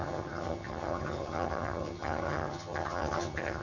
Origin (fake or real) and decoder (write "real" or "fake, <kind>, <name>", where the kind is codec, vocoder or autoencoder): fake, vocoder, HiFi-GAN